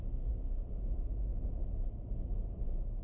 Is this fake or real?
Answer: real